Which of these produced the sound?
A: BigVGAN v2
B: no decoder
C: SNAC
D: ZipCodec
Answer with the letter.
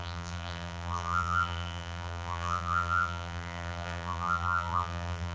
A